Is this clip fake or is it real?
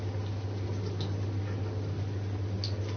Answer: real